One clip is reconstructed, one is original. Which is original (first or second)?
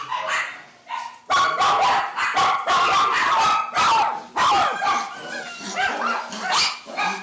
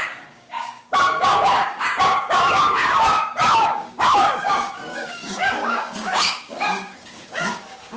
first